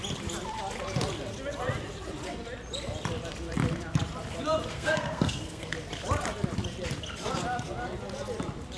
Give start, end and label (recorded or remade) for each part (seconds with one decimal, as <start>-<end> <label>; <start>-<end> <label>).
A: 0.0-4.7 recorded; 4.7-5.7 remade; 5.7-8.8 recorded